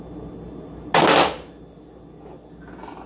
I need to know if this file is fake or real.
real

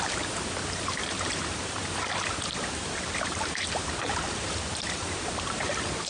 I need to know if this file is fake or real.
fake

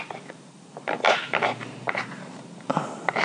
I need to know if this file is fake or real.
fake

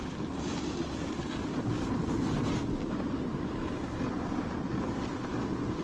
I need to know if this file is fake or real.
real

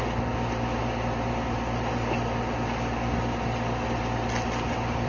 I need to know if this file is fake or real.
fake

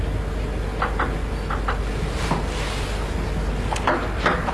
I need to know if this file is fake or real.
real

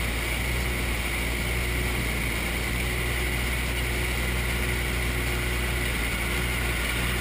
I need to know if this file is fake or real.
real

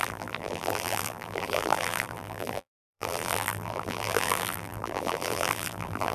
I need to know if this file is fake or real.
fake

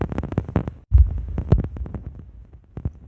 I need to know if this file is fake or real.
real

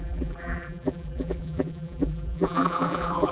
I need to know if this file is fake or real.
fake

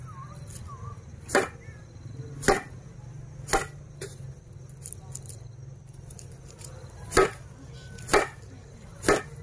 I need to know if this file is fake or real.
real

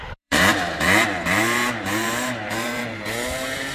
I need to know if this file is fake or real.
fake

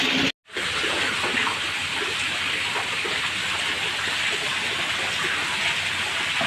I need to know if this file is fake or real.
real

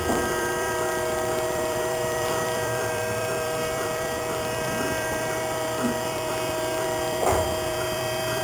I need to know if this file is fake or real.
fake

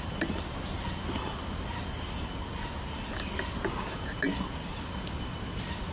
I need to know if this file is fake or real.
real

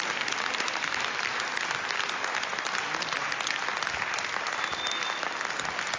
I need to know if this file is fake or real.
real